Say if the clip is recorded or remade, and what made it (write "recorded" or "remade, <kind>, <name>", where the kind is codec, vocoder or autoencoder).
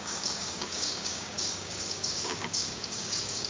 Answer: remade, codec, DAC